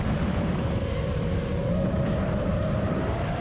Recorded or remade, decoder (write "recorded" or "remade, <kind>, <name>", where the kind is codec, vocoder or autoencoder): remade, vocoder, BigVGAN v2